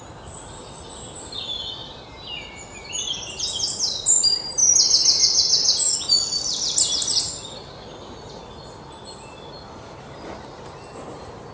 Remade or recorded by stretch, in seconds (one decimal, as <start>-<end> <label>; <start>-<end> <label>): 0.0-11.5 recorded

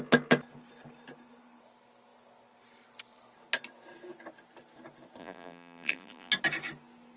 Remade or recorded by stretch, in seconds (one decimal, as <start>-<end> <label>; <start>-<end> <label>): 0.0-5.2 recorded; 5.2-6.3 remade; 6.3-7.2 recorded

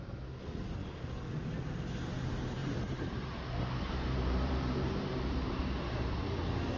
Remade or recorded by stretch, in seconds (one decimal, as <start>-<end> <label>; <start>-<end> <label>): 0.0-2.6 recorded; 2.6-5.6 remade; 5.6-6.8 recorded

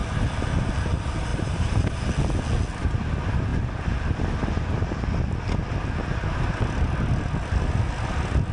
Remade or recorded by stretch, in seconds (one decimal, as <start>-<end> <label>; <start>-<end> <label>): 0.0-1.3 recorded; 1.3-2.1 remade; 2.1-8.5 recorded

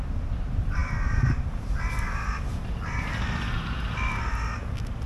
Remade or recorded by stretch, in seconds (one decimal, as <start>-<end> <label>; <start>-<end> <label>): 0.0-5.1 recorded

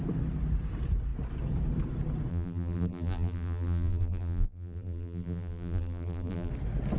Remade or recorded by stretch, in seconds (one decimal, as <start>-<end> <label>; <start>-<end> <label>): 0.0-2.3 recorded; 2.3-6.5 remade; 6.5-7.0 recorded

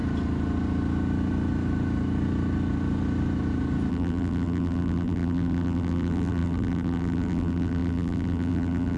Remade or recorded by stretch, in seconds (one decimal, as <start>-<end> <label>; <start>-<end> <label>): 0.0-3.9 recorded; 3.9-9.0 remade